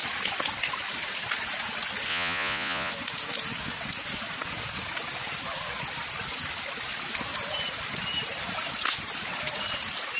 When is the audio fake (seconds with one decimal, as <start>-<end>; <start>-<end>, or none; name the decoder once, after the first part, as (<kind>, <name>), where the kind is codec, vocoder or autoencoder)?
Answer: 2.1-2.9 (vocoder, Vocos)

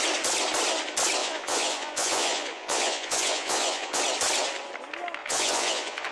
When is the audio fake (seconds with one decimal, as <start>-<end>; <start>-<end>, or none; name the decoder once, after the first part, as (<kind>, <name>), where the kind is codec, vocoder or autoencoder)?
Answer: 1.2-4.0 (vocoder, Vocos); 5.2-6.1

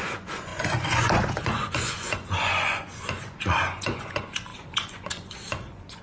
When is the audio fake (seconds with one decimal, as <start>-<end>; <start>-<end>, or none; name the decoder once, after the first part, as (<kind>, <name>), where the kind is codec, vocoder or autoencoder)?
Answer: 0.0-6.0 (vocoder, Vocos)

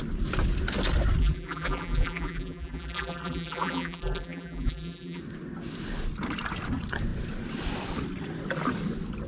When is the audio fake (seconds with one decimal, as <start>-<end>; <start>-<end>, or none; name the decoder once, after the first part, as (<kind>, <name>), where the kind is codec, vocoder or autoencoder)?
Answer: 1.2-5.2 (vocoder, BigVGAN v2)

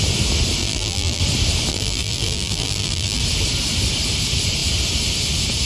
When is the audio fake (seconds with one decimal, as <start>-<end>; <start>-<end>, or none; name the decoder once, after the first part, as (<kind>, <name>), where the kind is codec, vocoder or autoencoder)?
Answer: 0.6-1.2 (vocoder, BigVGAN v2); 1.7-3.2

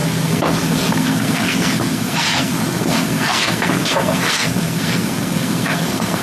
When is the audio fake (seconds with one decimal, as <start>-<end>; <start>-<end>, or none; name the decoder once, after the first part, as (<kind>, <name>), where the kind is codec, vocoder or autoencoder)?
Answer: 0.0-6.2 (codec, SNAC)